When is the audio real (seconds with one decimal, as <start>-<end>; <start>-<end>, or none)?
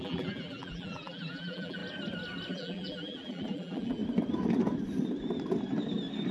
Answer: 1.8-2.5; 4.0-6.3